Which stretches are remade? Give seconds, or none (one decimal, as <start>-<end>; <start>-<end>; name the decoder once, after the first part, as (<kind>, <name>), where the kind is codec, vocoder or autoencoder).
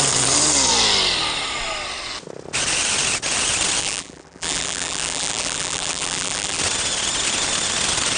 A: 3.8-6.6 (vocoder, BigVGAN v2)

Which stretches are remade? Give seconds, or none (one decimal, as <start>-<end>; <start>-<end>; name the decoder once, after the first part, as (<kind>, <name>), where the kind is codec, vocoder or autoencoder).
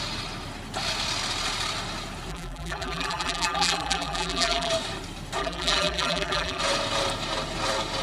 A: 2.3-4.7 (vocoder, BigVGAN v2); 5.4-6.6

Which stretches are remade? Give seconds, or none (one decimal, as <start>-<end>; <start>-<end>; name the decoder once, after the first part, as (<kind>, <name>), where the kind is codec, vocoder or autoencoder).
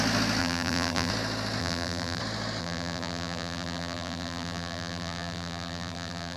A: 0.4-1.1 (vocoder, BigVGAN v2); 1.6-2.2; 2.6-6.4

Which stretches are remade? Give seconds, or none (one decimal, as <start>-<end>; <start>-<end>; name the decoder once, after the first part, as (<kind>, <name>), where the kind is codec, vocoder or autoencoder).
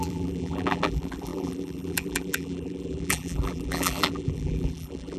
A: 0.0-5.2 (vocoder, BigVGAN v2)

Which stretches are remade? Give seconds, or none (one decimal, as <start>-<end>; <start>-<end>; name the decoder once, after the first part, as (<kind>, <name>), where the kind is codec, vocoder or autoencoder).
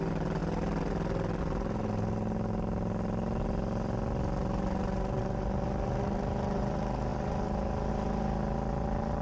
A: 7.1-7.9 (vocoder, BigVGAN v2)